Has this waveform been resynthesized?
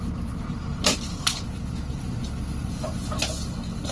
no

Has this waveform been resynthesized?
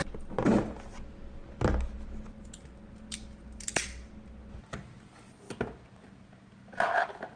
no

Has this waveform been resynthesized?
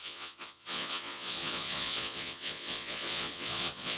yes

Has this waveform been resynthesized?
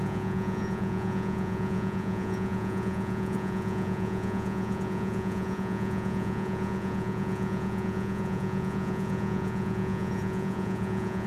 yes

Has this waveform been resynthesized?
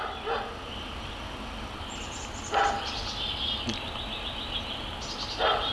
no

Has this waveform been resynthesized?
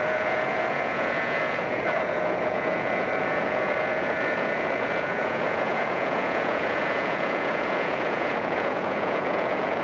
yes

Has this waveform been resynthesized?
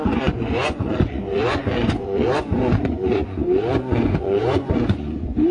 yes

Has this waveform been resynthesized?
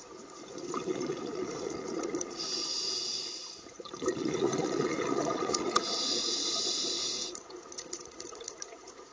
yes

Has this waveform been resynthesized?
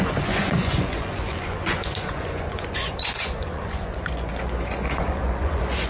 yes